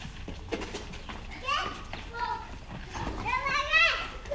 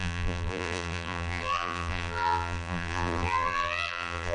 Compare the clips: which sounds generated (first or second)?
second